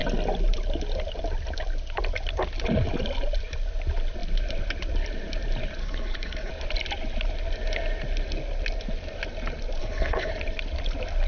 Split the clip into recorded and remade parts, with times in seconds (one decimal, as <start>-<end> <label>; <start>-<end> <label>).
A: 0.0-5.8 recorded; 5.8-6.5 remade; 6.5-9.8 recorded; 9.8-10.3 remade; 10.3-11.3 recorded